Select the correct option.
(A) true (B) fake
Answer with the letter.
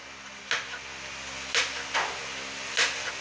A